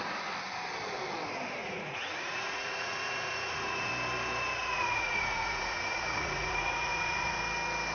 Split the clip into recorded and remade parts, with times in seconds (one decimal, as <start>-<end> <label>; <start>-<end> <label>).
0.0-1.6 recorded; 1.6-3.9 remade; 3.9-4.6 recorded; 4.6-7.4 remade; 7.4-7.9 recorded